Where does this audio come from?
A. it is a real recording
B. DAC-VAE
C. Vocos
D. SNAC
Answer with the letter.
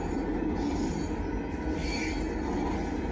A